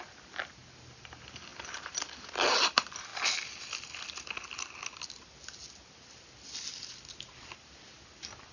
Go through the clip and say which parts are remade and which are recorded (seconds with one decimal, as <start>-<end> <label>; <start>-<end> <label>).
0.0-8.5 recorded